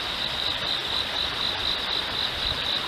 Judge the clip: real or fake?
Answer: real